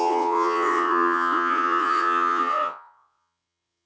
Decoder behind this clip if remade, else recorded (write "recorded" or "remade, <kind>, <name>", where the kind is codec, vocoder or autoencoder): remade, vocoder, WaveNeXt